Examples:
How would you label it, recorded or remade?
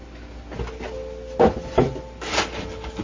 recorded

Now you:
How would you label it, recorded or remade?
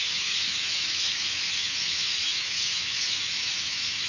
remade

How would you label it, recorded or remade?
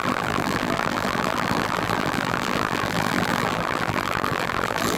remade